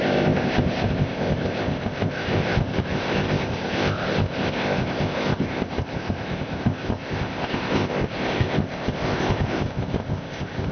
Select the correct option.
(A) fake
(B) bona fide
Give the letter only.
A